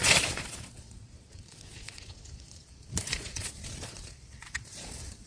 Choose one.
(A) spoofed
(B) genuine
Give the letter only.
A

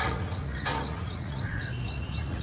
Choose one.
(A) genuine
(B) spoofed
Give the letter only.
B